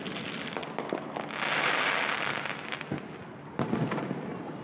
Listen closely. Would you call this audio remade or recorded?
recorded